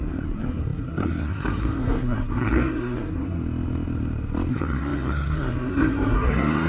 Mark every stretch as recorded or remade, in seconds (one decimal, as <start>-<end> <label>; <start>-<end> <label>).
0.0-3.4 remade; 3.4-4.5 recorded; 4.5-6.7 remade

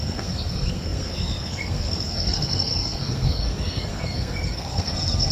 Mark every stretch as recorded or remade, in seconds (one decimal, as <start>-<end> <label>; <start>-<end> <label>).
0.0-5.3 remade

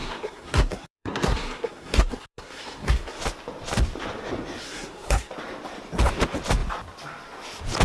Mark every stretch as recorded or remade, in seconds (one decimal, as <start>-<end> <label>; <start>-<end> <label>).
0.0-3.2 remade; 3.2-4.6 recorded; 4.6-5.3 remade; 5.3-7.8 recorded

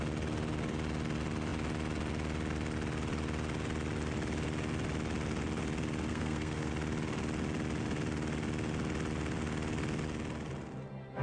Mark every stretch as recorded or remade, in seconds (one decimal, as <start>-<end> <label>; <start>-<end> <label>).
0.0-6.1 recorded; 6.1-6.7 remade; 6.7-11.2 recorded